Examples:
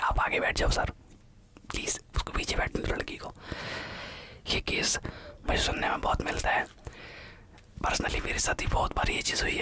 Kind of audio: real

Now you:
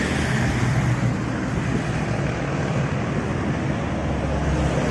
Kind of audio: real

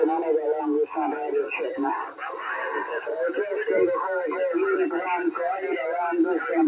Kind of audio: real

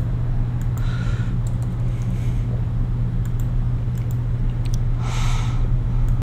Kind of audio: real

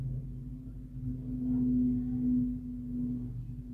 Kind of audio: real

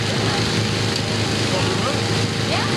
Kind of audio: real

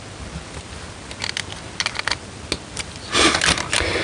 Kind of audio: real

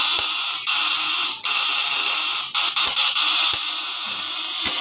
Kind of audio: real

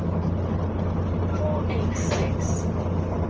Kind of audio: real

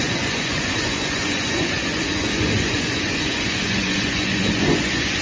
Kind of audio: fake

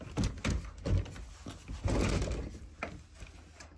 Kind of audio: real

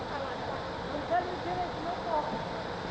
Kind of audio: real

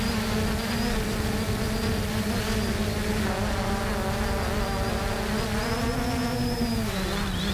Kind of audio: real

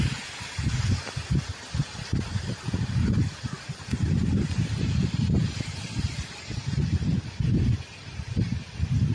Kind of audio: real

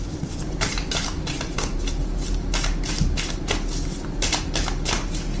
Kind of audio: real